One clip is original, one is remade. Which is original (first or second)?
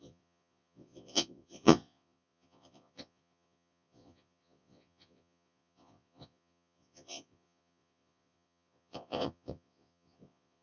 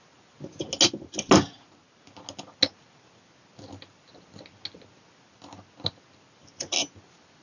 second